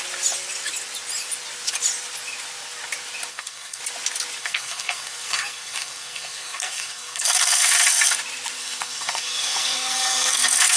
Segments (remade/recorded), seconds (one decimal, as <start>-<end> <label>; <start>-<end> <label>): 0.0-3.3 recorded; 3.3-3.8 remade; 3.8-4.4 recorded; 4.4-7.7 remade; 7.7-8.6 recorded; 8.6-10.8 remade